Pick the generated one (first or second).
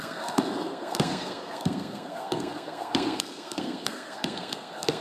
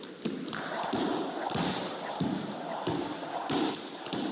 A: first